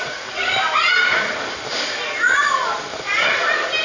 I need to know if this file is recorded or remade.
recorded